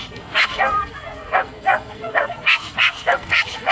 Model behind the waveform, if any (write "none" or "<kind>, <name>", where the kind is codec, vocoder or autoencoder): codec, SNAC